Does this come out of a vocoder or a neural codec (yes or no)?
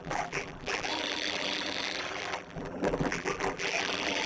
yes